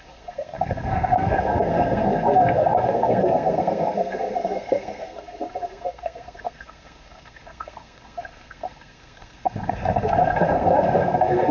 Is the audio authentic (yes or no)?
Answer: no